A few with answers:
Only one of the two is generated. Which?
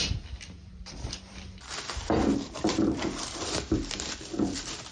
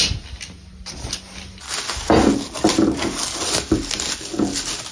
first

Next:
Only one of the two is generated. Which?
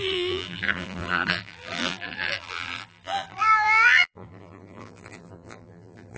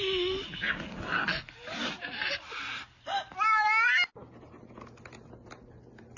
first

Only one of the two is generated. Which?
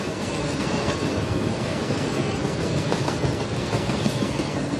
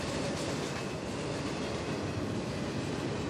first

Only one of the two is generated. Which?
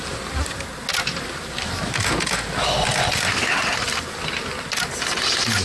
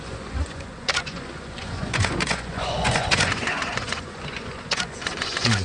second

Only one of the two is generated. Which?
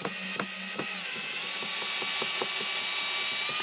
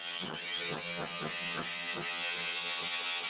second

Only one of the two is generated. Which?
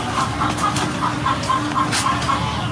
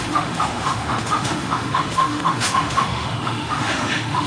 second